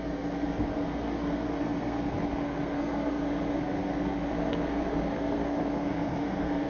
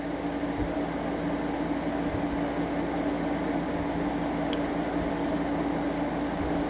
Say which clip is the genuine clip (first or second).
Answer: second